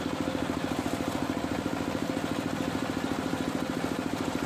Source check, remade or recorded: recorded